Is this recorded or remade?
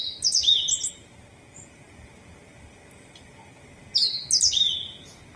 recorded